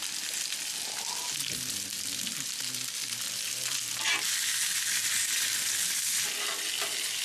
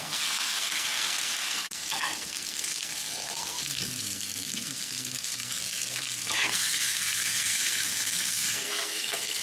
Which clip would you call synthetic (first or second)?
second